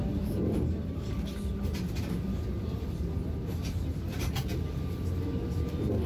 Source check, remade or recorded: recorded